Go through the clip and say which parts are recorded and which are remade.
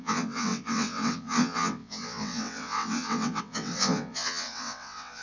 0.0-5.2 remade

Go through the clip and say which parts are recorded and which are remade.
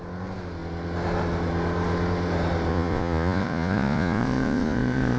0.0-2.7 recorded; 2.7-5.2 remade